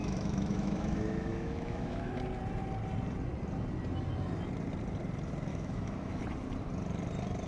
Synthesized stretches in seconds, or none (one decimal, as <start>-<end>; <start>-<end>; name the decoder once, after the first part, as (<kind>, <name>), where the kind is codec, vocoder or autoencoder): 0.0-2.2 (autoencoder, DAC-VAE); 5.5-6.2